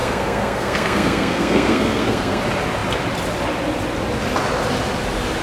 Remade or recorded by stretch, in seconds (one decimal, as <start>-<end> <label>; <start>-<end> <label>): 0.0-2.4 remade; 2.4-5.4 recorded